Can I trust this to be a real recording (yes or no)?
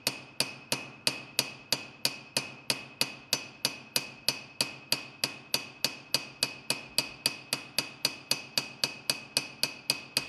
yes